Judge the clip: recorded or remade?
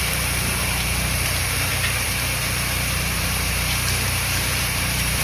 remade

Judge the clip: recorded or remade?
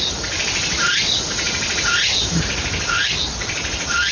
recorded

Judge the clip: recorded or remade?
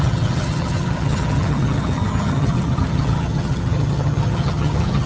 remade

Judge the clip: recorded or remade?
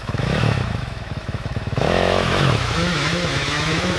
remade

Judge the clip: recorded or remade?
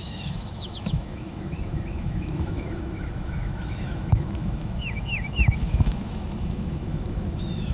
remade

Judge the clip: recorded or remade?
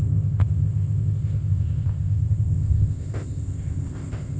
remade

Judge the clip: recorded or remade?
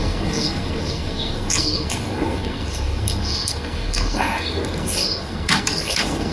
remade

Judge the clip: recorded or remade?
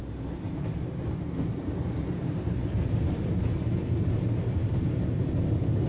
recorded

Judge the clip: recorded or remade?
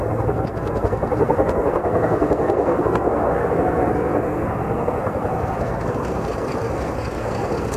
remade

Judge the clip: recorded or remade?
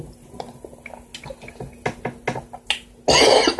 recorded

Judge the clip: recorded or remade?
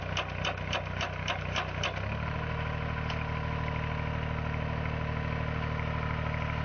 recorded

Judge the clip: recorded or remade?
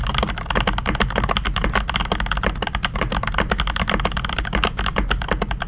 recorded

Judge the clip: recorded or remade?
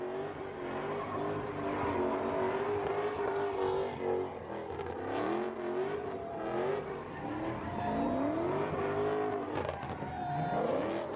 recorded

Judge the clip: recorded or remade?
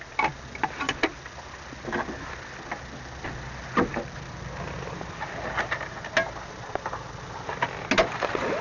recorded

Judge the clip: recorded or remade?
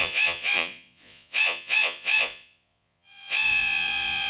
remade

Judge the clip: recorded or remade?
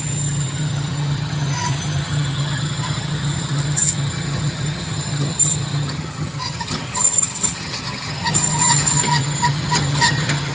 remade